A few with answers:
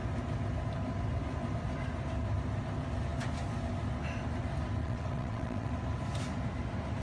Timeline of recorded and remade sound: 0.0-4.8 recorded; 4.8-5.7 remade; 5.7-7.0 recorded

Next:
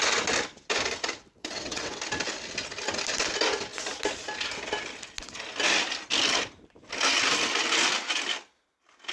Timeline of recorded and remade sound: 0.0-1.4 recorded; 1.4-2.0 remade; 2.0-9.1 recorded

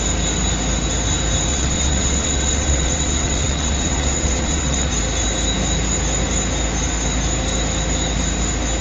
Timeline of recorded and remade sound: 0.0-1.5 recorded; 1.5-4.9 remade; 4.9-8.8 recorded

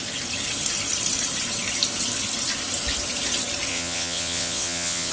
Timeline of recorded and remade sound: 0.0-3.7 recorded; 3.7-5.1 remade

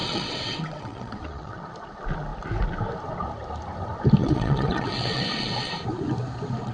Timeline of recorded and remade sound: 0.0-1.6 remade; 1.6-4.2 recorded; 4.2-5.7 remade; 5.7-6.7 recorded